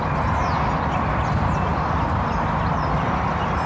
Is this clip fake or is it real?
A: real